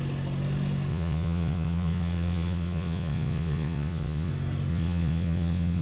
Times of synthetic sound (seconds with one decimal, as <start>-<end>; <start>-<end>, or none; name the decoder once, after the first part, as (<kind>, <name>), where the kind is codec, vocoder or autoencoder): 0.9-4.3 (vocoder, Vocos); 4.7-5.8

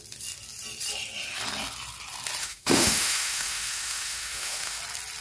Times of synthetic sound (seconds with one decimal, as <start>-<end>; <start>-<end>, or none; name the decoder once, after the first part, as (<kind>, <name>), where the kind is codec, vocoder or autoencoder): 2.4-4.8 (autoencoder, DAC-VAE)

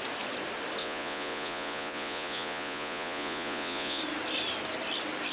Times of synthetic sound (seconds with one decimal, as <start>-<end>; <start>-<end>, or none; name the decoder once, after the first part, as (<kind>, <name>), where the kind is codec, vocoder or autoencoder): 0.8-4.0 (vocoder, Vocos)

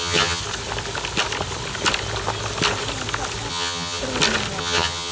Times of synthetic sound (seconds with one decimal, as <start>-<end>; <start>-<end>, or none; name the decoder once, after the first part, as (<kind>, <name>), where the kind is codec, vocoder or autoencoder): 0.0-0.4 (vocoder, HiFi-GAN); 3.5-4.0; 4.6-5.1

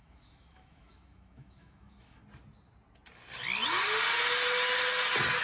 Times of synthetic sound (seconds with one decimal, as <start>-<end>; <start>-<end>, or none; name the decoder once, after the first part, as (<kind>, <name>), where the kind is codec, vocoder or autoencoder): 0.0-2.2 (autoencoder, DAC-VAE)

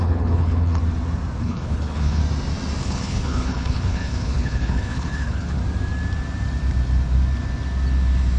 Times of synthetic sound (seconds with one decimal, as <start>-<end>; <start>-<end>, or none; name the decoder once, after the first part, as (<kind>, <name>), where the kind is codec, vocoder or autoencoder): 0.0-0.8 (codec, HILCodec); 1.4-2.2; 2.8-5.6

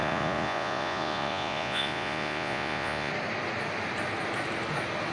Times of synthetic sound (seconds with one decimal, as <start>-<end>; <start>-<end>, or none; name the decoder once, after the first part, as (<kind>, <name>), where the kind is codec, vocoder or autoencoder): 0.0-3.1 (vocoder, Vocos)